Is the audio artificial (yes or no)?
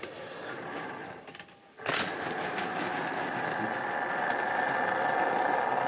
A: no